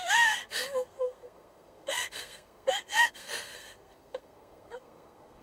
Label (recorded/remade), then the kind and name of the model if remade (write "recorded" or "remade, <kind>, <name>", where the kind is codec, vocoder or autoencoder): remade, codec, SNAC